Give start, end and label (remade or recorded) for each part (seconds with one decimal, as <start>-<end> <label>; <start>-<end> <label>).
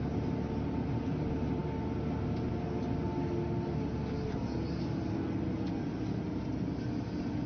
0.0-7.5 recorded